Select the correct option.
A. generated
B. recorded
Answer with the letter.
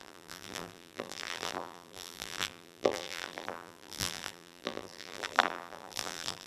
A